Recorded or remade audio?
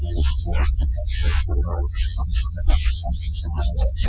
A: remade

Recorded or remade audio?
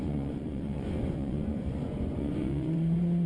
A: remade